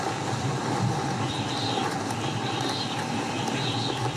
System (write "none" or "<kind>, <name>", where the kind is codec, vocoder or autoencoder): vocoder, BigVGAN v2